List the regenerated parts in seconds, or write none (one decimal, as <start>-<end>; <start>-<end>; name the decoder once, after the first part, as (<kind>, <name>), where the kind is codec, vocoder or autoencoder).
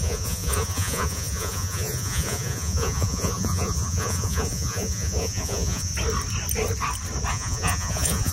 0.0-5.9 (vocoder, Vocos); 7.3-8.3